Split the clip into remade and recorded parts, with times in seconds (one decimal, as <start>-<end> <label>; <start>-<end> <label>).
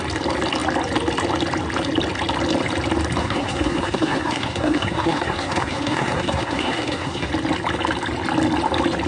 0.0-3.2 recorded; 3.2-7.3 remade; 7.3-9.1 recorded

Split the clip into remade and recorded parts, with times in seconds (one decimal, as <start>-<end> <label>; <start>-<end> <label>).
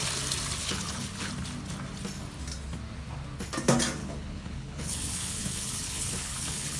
0.0-0.6 recorded; 0.6-1.3 remade; 1.3-4.0 recorded; 4.0-6.8 remade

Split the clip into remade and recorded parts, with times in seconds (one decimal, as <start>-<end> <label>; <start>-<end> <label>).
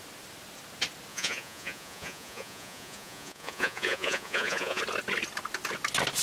0.0-1.1 recorded; 1.1-4.8 remade; 4.8-6.2 recorded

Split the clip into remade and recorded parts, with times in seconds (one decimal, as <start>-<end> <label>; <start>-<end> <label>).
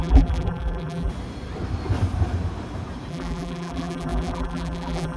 0.0-1.1 remade; 1.1-3.1 recorded; 3.1-5.2 remade